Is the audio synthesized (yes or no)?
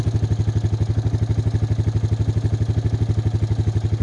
no